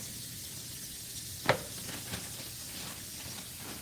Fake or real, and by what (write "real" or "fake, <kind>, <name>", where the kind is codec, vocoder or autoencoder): real